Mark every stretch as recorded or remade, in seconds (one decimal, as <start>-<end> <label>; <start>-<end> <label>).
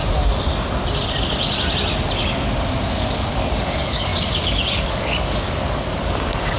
0.0-2.9 recorded; 2.9-6.6 remade